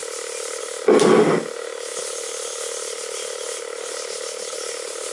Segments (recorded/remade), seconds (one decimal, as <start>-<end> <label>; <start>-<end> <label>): 0.0-5.1 recorded